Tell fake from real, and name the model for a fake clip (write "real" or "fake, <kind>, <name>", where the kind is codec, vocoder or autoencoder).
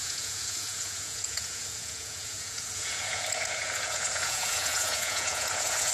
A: fake, vocoder, Vocos